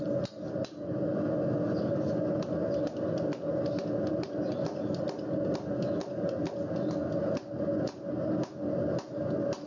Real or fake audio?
real